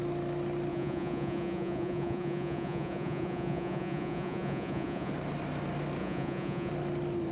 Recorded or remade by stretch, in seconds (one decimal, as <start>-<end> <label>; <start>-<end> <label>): 0.0-0.7 recorded; 0.7-5.1 remade; 5.1-6.0 recorded; 6.0-6.7 remade; 6.7-7.3 recorded